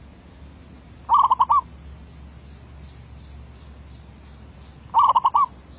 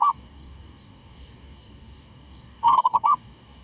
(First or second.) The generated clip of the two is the second